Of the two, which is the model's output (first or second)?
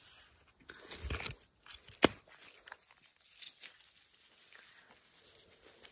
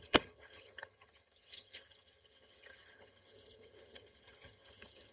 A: second